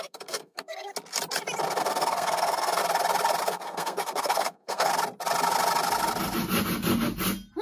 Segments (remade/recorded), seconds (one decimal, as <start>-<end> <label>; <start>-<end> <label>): 0.0-0.9 remade; 0.9-1.8 recorded; 1.8-2.8 remade; 2.8-3.4 recorded; 3.4-4.9 remade; 4.9-7.6 recorded